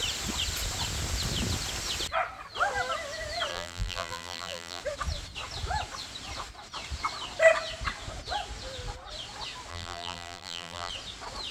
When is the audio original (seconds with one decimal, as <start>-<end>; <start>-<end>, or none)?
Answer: 0.0-3.5; 4.8-9.7; 10.9-11.5